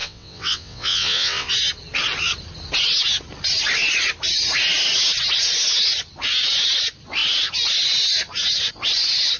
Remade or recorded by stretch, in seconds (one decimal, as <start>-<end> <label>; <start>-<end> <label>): 0.0-1.5 remade; 1.5-9.4 recorded